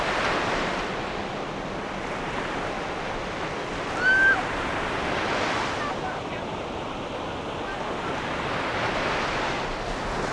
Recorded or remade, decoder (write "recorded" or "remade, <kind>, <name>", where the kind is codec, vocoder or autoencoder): recorded